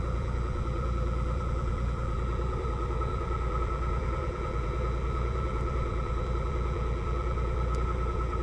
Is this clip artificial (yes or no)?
yes